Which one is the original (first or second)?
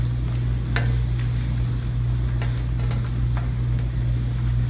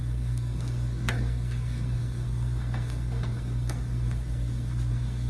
first